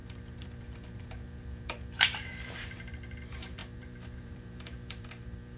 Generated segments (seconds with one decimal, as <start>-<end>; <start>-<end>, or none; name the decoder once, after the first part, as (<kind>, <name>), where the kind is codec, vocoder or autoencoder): 0.0-5.6 (vocoder, BigVGAN v2)